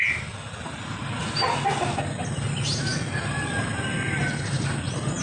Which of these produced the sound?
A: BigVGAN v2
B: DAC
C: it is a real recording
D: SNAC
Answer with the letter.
C